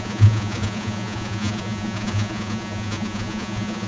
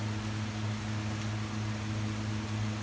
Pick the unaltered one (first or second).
second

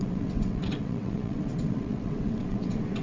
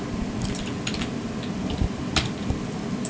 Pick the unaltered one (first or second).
second